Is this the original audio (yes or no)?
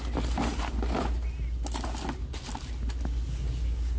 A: yes